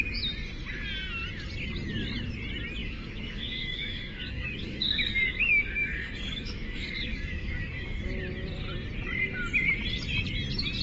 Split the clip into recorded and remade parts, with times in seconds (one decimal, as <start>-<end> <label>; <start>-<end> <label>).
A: 0.0-2.8 recorded; 2.8-8.0 remade; 8.0-10.8 recorded